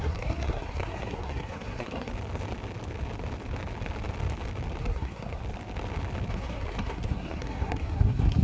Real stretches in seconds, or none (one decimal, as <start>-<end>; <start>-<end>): 2.1-4.8; 5.4-6.3